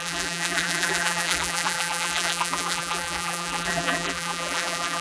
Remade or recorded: remade